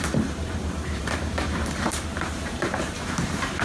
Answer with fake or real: fake